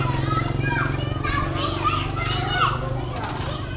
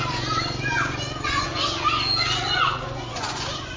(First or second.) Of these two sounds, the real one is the first